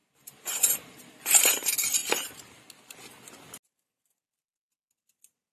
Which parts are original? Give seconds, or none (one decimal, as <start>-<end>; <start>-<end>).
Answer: 1.1-2.0; 2.6-5.5